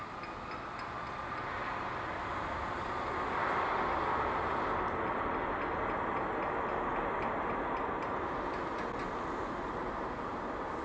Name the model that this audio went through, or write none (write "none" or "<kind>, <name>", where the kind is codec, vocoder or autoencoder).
none